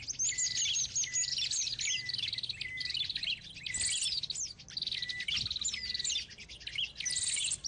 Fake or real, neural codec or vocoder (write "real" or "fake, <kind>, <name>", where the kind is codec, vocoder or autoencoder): real